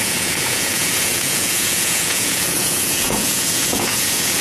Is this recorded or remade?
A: remade